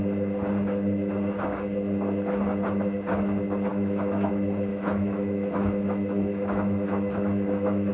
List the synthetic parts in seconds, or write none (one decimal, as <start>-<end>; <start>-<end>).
3.7-4.3; 4.7-7.9